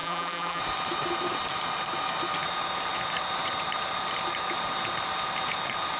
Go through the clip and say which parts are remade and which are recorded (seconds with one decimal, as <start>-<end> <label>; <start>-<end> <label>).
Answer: 0.0-0.6 remade; 0.6-6.0 recorded